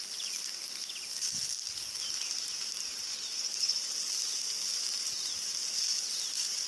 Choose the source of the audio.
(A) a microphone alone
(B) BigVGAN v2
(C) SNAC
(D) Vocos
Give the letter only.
A